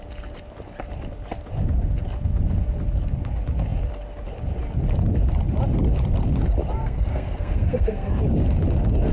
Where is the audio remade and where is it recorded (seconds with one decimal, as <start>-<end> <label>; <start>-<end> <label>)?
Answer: 0.0-6.8 recorded; 6.8-8.1 remade; 8.1-9.1 recorded